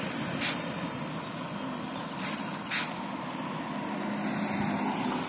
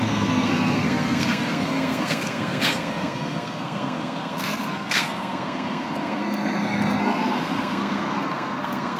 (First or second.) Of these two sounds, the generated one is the second